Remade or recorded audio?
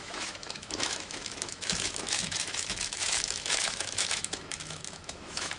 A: remade